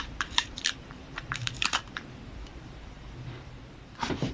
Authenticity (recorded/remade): remade